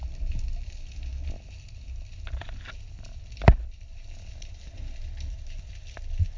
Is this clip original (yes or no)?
yes